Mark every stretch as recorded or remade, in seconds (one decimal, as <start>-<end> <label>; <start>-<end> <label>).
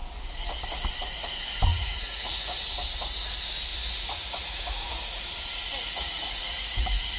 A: 0.0-1.7 recorded; 1.7-2.6 remade; 2.6-3.7 recorded; 3.7-5.2 remade; 5.2-6.4 recorded; 6.4-7.2 remade